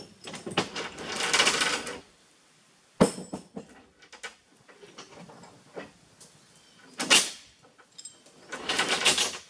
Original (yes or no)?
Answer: yes